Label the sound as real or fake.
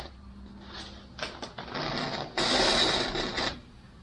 real